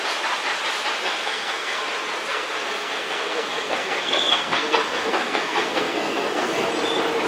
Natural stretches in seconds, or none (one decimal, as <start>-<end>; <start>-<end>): 0.0-1.0; 1.8-2.3; 6.7-7.3